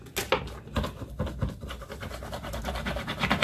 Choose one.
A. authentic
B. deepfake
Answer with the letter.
A